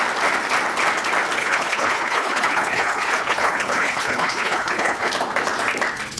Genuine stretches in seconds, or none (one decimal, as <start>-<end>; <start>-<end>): 0.0-1.4; 5.1-6.2